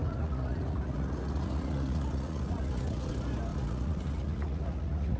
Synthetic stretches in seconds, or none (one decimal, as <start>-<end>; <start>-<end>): 0.0-3.1; 3.5-5.2